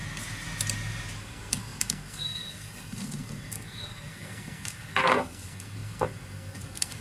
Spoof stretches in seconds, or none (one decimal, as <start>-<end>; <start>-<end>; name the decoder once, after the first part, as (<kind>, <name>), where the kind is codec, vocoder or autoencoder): 1.2-7.0 (codec, SNAC)